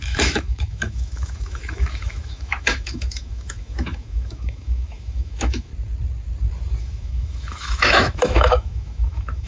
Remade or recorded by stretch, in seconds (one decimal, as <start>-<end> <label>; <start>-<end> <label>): 0.0-5.7 remade; 5.7-6.8 recorded; 6.8-9.5 remade